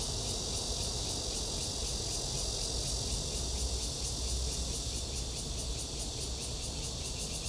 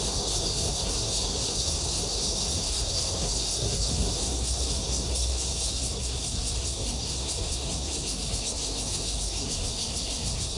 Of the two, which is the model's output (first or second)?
second